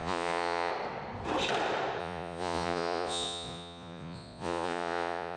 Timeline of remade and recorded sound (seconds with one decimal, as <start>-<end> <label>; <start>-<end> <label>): 0.0-0.7 remade; 0.7-2.0 recorded; 2.0-5.4 remade